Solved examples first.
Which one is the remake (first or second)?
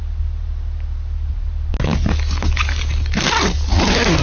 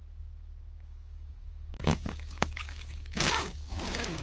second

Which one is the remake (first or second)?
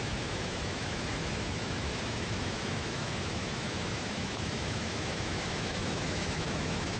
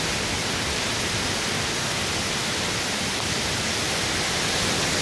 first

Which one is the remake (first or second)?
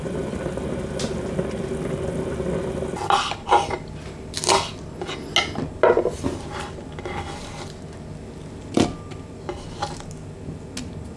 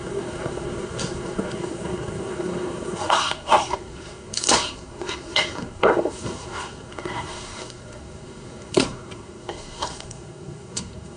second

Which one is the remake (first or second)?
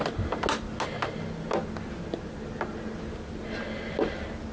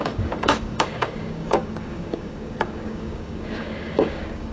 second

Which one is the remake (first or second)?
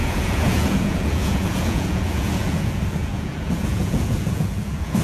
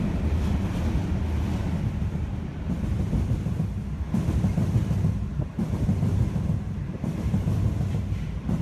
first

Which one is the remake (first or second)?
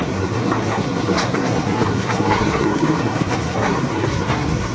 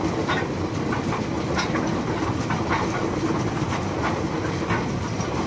first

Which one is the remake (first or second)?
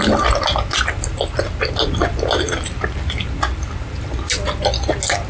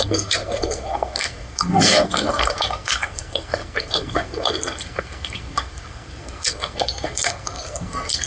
second